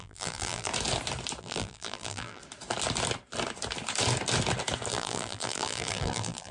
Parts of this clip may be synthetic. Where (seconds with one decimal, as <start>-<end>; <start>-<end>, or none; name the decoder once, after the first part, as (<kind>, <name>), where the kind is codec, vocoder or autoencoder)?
0.0-0.7 (vocoder, BigVGAN v2); 1.4-2.4; 4.9-6.5